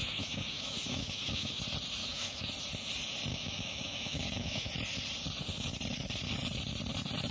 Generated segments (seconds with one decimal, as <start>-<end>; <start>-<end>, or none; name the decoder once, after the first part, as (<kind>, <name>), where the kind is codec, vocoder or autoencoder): 0.0-1.6 (autoencoder, DAC-VAE); 2.0-2.5; 3.3-4.7